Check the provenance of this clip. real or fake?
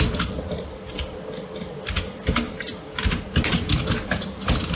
real